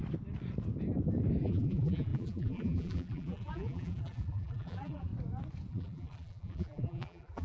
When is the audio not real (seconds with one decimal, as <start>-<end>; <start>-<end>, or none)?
1.4-5.1; 5.7-7.4